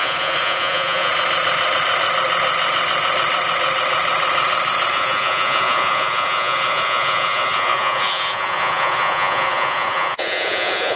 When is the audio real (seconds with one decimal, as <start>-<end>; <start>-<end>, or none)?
1.1-4.9